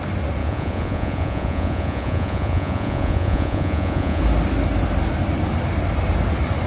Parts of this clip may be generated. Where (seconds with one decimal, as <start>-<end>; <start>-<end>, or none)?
0.4-4.2